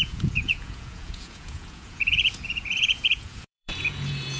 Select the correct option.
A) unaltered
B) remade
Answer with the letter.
B